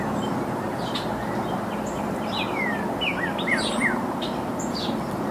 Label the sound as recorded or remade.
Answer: recorded